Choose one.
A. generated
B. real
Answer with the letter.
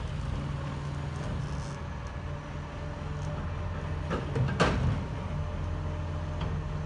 B